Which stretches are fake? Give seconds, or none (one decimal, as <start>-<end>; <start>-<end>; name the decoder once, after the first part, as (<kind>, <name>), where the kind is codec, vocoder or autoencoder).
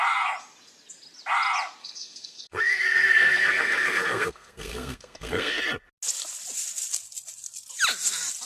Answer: 1.8-5.6 (codec, SNAC)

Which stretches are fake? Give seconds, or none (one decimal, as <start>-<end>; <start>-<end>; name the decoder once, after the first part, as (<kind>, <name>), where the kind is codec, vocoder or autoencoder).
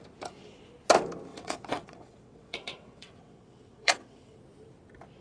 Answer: 1.3-4.4 (vocoder, WaveNeXt)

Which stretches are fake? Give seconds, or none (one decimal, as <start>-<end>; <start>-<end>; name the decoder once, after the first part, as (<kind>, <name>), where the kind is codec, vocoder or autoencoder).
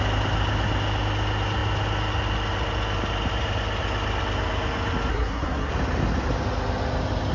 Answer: 5.1-5.7 (codec, SNAC)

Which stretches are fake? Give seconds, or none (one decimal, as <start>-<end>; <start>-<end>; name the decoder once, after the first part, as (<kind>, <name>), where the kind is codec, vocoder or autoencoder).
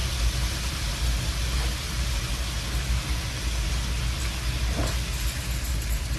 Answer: none